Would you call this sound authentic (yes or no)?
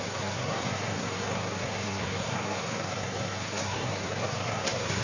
no